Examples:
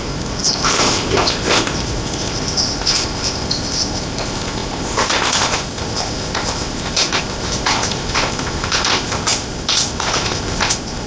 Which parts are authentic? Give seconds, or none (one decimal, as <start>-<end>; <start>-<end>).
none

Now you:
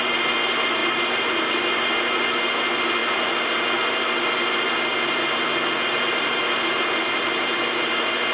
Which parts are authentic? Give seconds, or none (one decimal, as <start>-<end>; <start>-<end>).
0.0-0.8; 1.9-8.3

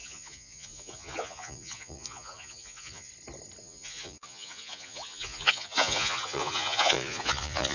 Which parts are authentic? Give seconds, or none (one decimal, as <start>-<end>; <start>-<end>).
3.1-3.6

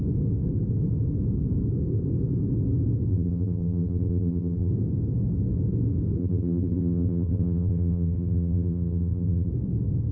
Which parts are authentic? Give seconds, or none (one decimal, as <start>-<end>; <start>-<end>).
0.0-3.1; 4.7-6.2; 9.5-10.1